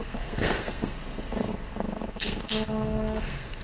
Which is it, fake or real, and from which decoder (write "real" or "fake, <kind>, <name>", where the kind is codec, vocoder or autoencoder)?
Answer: fake, codec, SNAC